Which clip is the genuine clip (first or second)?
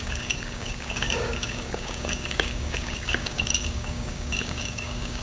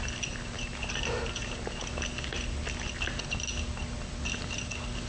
second